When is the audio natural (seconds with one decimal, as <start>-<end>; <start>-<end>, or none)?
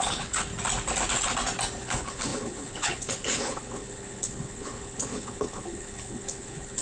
0.5-1.8